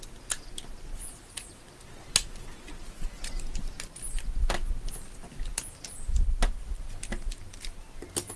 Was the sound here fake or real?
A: real